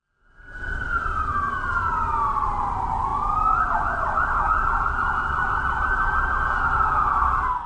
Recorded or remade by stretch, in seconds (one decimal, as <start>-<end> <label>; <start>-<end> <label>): 0.0-7.7 recorded